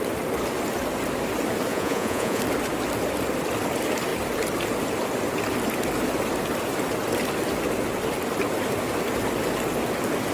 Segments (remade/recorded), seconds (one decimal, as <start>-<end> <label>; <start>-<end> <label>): 0.0-1.7 recorded; 1.7-2.4 remade; 2.4-10.3 recorded